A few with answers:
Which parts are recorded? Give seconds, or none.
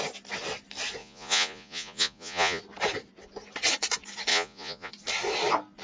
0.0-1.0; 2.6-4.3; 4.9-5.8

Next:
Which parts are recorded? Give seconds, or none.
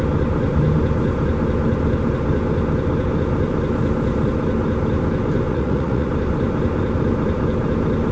0.0-5.5; 6.1-8.1